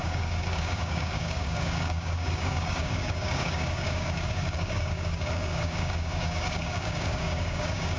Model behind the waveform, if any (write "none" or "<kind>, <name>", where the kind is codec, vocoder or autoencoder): codec, DAC